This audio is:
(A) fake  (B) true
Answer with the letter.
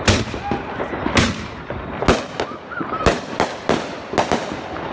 B